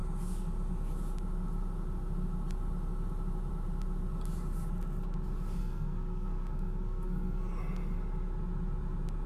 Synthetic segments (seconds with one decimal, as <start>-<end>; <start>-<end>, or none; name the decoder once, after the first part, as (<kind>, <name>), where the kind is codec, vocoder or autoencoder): 5.6-7.5 (codec, SNAC)